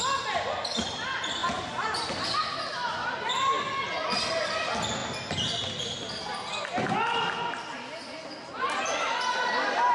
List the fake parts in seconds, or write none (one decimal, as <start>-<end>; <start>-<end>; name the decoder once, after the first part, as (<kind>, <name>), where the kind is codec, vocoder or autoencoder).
none